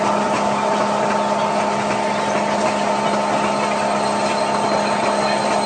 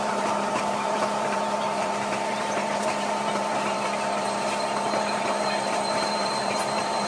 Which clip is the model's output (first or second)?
second